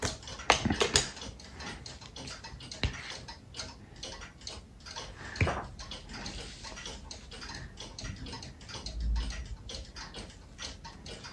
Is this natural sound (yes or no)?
yes